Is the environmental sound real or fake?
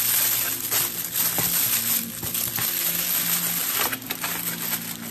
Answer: real